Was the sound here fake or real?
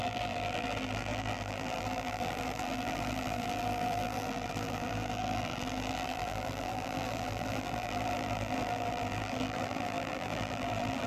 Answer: fake